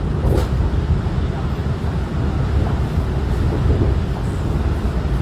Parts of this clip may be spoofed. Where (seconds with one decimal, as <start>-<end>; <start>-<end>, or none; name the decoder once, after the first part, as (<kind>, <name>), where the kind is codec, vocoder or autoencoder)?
none